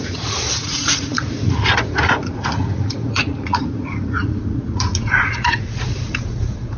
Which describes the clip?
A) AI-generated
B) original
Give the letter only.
A